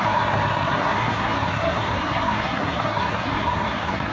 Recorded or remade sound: remade